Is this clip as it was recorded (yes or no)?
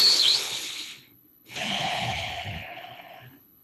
no